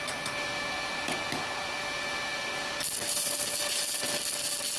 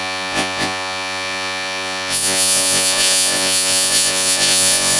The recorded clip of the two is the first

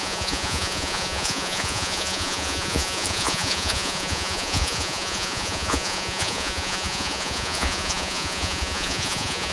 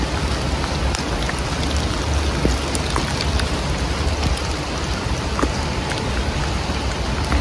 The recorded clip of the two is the second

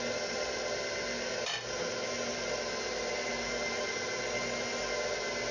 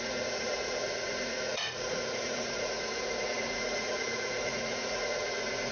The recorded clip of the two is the first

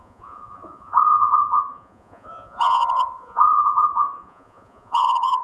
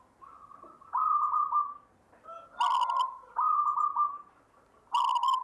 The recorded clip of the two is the second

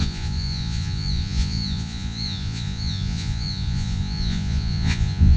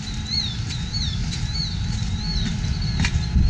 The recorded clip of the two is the second